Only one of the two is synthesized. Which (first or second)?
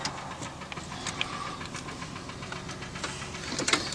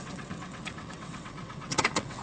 second